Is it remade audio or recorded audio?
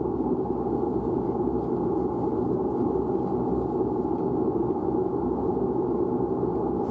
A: recorded